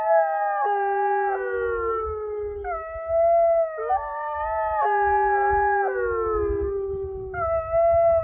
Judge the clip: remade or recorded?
recorded